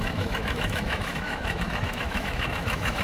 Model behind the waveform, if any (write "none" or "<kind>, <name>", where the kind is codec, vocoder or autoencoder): autoencoder, DAC-VAE